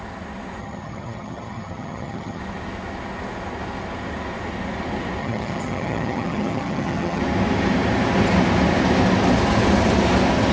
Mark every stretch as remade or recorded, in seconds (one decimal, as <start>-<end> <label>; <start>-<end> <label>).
0.0-0.6 recorded; 0.6-2.4 remade; 2.4-5.2 recorded; 5.2-7.2 remade; 7.2-10.5 recorded